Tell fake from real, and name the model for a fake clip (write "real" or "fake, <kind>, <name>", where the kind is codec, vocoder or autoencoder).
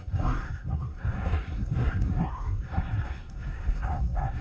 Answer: fake, codec, SNAC